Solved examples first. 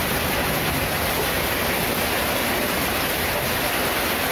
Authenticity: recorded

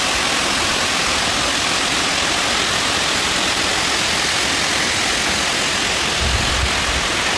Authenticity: recorded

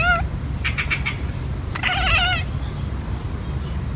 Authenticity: recorded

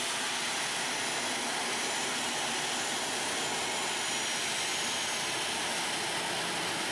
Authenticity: recorded